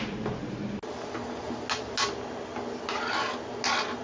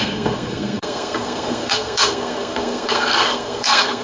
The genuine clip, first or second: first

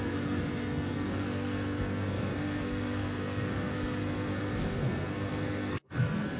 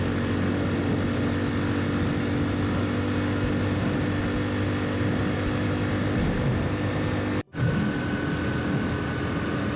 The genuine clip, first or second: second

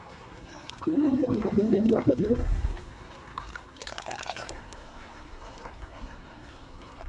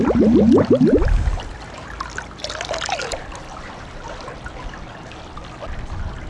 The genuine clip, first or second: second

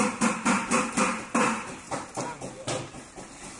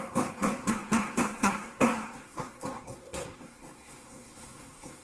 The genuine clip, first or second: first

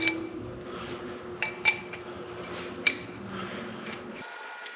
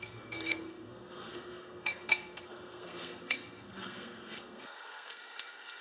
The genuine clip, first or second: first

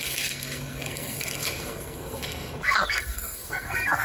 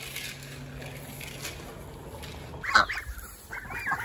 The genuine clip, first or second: second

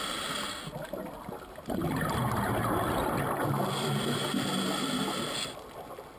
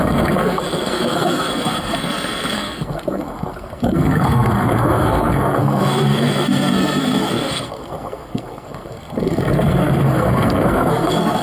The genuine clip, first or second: first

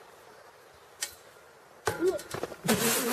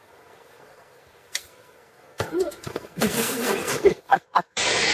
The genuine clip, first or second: first